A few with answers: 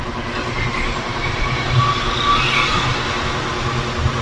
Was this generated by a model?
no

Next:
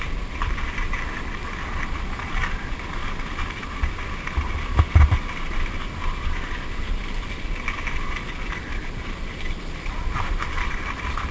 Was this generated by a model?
no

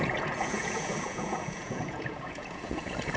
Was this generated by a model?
yes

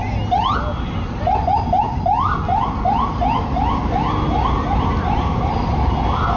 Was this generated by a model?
no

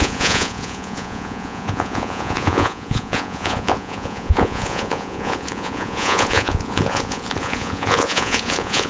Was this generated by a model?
yes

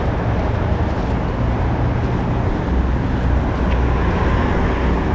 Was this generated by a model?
no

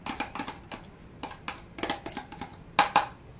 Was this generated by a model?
no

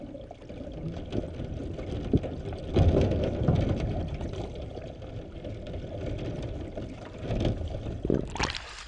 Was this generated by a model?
no